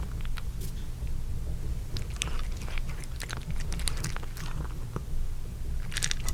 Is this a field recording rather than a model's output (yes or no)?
yes